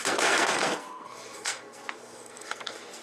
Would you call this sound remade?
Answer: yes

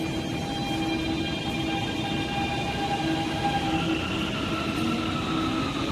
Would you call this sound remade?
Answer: no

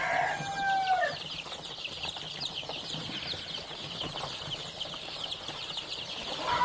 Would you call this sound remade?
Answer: yes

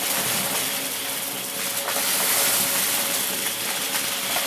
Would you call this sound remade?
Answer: no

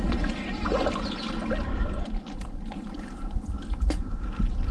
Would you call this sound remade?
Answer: no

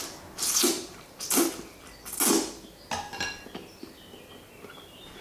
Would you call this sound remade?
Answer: no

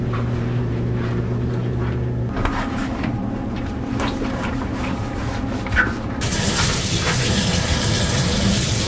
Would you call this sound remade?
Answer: yes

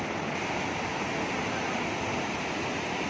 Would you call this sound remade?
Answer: no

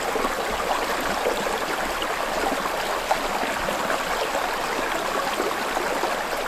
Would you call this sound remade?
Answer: no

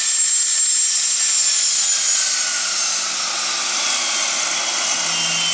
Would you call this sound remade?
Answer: no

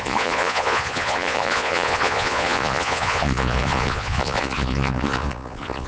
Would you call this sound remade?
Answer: yes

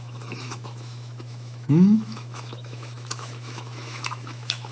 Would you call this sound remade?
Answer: yes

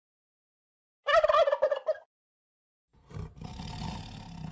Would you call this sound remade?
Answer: no